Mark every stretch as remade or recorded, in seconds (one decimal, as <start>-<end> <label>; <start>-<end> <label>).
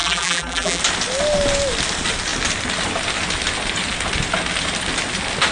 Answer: 0.0-0.8 remade; 0.8-5.5 recorded